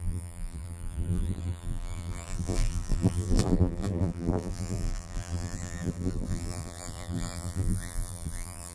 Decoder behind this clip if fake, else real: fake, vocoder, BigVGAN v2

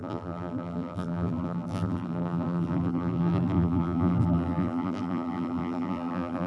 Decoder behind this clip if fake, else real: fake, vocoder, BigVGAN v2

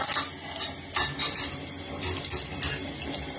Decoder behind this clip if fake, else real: real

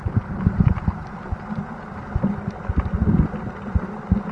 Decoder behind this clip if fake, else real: real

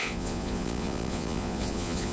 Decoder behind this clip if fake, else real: fake, vocoder, Vocos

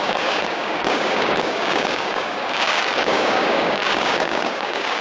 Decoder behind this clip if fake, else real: fake, codec, DAC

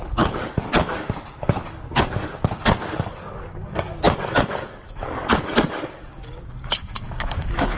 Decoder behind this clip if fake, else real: fake, codec, DAC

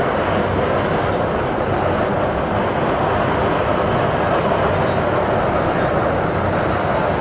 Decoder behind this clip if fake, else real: real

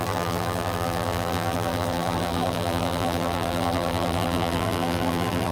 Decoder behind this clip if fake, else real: fake, vocoder, BigVGAN v2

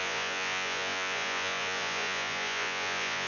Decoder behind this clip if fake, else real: fake, vocoder, Vocos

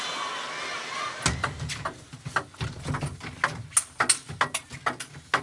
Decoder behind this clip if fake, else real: real